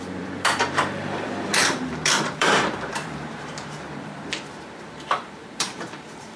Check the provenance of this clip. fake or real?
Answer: fake